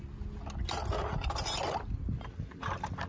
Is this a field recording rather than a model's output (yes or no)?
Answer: yes